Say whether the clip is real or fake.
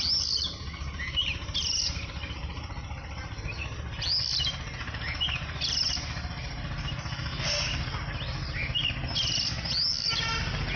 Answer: real